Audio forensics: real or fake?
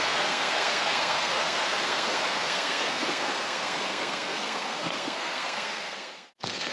fake